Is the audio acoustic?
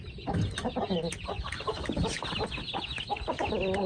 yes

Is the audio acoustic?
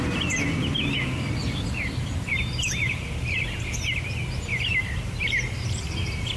no